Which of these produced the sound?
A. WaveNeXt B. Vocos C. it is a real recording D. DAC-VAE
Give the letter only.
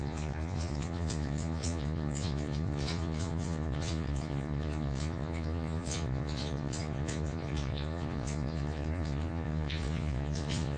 B